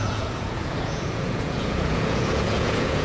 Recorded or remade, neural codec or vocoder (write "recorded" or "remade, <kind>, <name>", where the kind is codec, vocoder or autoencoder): remade, vocoder, Vocos